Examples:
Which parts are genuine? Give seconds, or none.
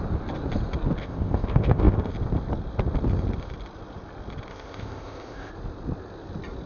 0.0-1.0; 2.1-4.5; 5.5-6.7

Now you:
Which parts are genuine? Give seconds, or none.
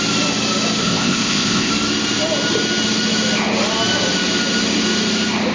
0.0-0.8; 1.7-5.5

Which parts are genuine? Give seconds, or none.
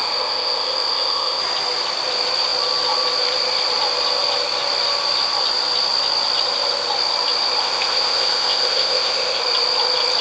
1.4-7.6; 9.4-10.2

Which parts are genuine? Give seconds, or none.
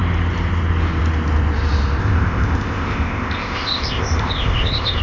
0.0-2.0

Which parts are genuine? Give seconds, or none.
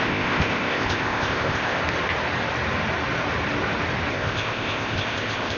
1.8-4.1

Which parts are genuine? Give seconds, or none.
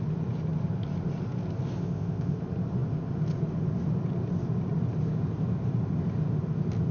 0.0-1.8; 2.4-6.9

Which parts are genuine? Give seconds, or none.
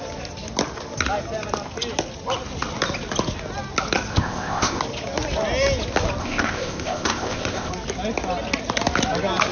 0.0-4.1; 4.8-6.2; 7.7-9.5